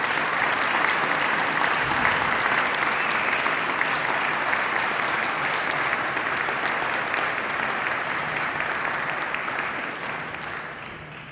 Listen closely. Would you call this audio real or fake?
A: real